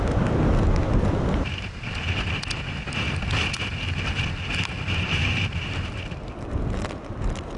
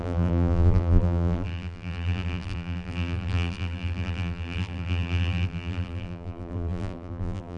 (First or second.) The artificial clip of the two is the second